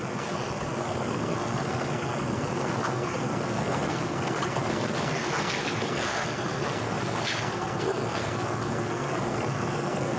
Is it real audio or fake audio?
fake